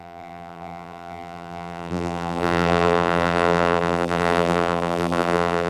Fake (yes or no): yes